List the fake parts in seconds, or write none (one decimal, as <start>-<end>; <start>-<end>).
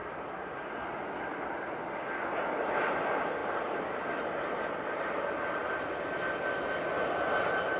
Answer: 0.0-1.4